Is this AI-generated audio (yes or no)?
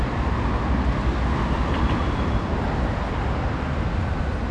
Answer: no